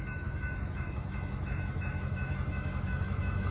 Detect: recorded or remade remade